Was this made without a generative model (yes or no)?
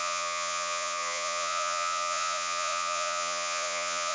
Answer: no